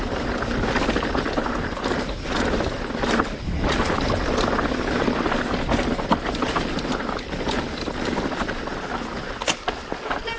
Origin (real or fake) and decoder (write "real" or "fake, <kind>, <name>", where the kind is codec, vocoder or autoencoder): real